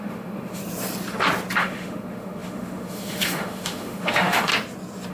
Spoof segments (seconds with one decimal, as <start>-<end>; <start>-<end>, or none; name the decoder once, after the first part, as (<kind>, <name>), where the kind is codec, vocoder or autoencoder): 0.0-0.6 (autoencoder, DAC-VAE); 1.6-4.5